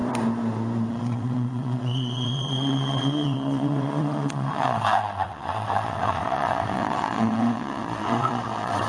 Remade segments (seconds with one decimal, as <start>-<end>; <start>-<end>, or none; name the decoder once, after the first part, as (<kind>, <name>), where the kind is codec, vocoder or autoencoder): 0.9-8.9 (vocoder, WaveNeXt)